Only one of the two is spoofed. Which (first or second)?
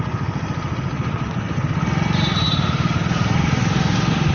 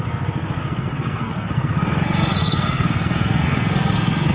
second